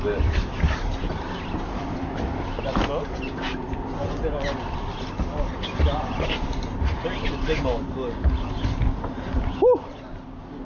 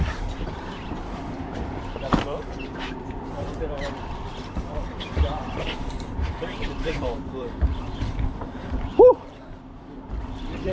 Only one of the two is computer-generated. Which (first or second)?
second